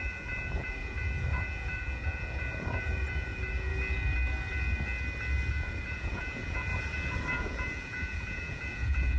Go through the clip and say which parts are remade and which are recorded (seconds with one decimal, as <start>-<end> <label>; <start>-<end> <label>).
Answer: 0.0-3.7 remade; 3.7-5.5 recorded; 5.5-6.7 remade; 6.7-7.3 recorded; 7.3-9.2 remade